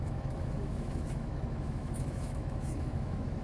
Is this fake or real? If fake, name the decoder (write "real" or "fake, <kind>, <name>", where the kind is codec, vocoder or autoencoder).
fake, autoencoder, DAC-VAE